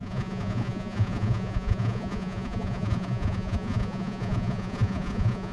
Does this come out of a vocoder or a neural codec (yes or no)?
yes